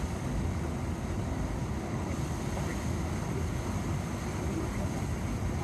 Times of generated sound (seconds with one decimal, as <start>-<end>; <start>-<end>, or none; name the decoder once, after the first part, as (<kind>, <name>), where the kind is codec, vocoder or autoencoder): none